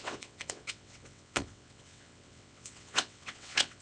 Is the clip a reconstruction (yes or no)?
yes